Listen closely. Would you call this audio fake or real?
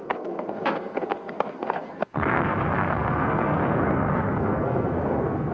fake